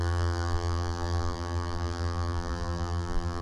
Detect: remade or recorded remade